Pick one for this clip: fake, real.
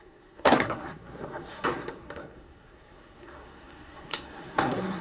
fake